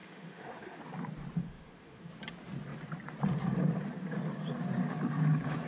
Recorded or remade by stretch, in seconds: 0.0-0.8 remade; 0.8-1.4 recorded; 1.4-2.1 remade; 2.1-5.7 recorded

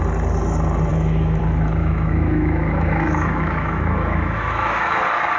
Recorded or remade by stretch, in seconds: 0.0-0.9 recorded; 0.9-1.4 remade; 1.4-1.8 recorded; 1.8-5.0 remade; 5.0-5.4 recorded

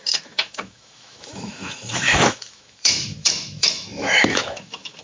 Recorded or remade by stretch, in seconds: 0.0-5.0 remade

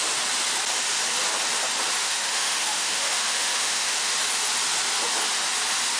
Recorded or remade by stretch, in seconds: 0.0-2.0 recorded; 2.0-4.1 remade; 4.1-6.0 recorded

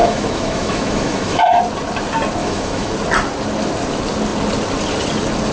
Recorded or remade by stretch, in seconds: 0.0-1.6 remade; 1.6-2.4 recorded; 2.4-2.9 remade; 2.9-5.5 recorded